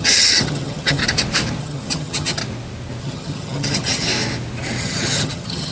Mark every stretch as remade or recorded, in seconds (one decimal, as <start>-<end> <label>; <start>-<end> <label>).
0.0-1.0 remade; 1.0-1.6 recorded; 1.6-2.4 remade; 2.4-3.0 recorded; 3.0-4.1 remade; 4.1-4.8 recorded; 4.8-5.7 remade